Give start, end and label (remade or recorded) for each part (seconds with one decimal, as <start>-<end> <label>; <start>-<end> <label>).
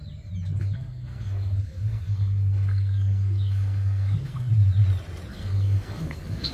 0.0-0.6 recorded; 0.6-4.5 remade; 4.5-5.3 recorded; 5.3-6.5 remade